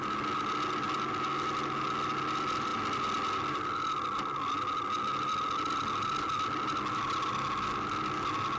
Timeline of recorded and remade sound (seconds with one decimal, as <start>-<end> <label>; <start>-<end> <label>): 0.0-8.6 recorded